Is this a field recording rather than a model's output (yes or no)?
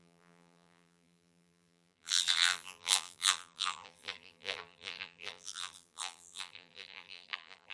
no